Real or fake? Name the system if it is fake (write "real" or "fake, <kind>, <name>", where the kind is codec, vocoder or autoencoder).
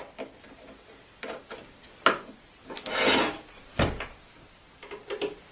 real